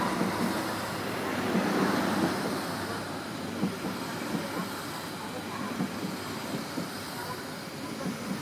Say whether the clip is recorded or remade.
recorded